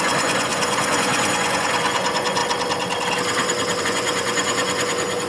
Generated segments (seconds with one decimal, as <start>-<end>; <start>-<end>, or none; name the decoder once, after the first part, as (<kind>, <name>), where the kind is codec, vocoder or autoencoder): 0.0-2.4 (vocoder, Vocos); 3.8-5.3